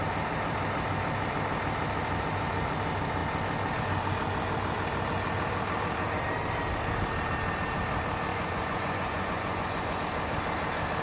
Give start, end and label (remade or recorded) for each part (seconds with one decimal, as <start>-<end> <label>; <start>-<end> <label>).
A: 0.0-8.3 recorded; 8.3-10.0 remade; 10.0-11.0 recorded